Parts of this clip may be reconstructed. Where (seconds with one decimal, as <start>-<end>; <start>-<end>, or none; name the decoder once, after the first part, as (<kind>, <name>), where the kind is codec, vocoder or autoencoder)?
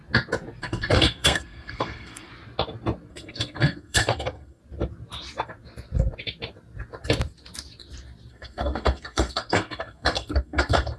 0.6-2.3 (codec, SNAC); 3.1-4.6; 8.3-11.0